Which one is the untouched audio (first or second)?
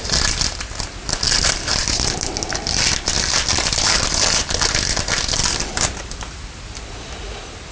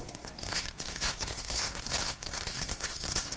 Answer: first